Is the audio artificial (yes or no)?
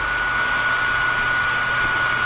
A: no